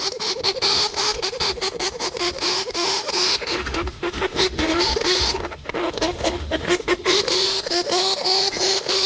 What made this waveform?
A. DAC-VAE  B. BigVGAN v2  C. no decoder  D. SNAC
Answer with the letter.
A